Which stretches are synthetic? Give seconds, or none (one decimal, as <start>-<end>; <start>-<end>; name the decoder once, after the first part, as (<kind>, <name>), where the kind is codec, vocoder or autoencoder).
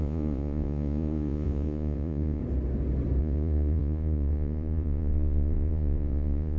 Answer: 0.0-2.4 (vocoder, Vocos); 3.2-6.6